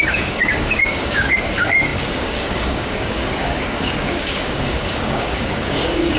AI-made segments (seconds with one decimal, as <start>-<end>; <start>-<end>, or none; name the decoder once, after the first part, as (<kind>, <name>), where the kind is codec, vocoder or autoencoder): 0.0-6.2 (codec, DAC)